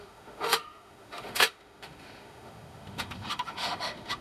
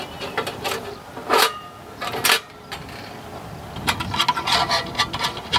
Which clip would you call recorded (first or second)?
second